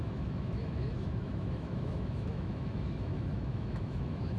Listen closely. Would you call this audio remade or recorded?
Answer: remade